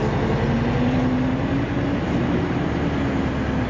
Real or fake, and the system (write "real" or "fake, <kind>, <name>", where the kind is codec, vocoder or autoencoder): real